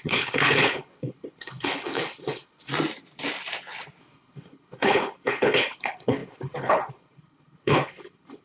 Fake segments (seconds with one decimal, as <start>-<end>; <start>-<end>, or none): 0.0-2.7; 4.0-8.4